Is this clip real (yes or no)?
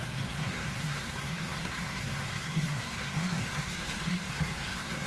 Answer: no